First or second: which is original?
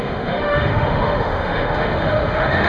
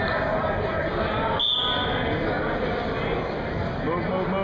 second